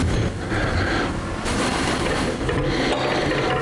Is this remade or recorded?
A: recorded